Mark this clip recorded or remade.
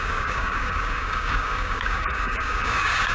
remade